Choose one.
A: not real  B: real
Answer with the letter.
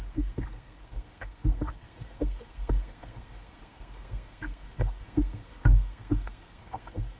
A